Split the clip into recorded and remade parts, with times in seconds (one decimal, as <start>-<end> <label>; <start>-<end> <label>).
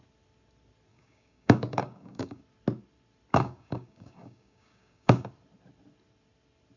0.0-0.9 recorded; 0.9-2.4 remade; 2.4-3.3 recorded; 3.3-5.3 remade; 5.3-6.8 recorded